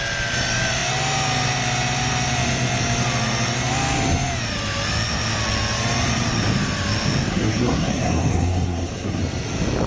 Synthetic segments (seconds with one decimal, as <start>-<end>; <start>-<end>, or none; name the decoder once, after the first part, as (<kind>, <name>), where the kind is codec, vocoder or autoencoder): 7.3-9.2 (codec, SNAC)